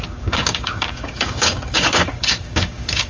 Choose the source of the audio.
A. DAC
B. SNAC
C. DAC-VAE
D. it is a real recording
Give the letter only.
A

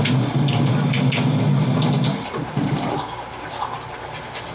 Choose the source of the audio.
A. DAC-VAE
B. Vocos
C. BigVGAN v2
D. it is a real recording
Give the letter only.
D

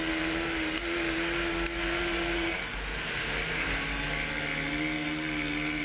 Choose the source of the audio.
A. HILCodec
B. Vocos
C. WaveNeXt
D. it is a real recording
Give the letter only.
D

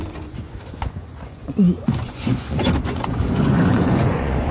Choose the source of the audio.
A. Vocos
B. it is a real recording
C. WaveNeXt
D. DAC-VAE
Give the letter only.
A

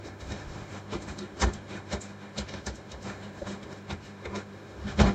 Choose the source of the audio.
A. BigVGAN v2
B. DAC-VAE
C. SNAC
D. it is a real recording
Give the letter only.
B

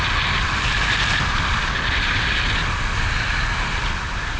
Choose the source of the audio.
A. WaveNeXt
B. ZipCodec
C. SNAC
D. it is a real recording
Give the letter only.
D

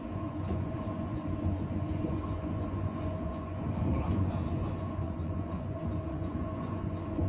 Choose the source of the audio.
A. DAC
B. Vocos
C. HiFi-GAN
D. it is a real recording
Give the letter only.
B